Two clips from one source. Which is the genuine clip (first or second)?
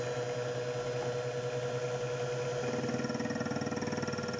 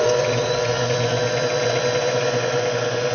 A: first